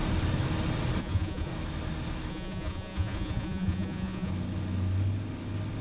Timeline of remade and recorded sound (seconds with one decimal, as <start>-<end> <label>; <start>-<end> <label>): 0.0-1.0 recorded; 1.0-1.5 remade; 1.5-2.3 recorded; 2.3-4.3 remade; 4.3-5.8 recorded